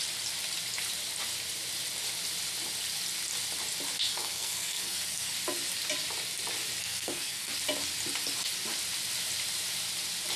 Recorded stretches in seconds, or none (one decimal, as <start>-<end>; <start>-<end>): 0.0-4.1; 5.3-6.8; 7.5-10.4